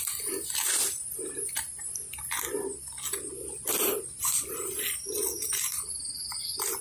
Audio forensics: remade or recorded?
recorded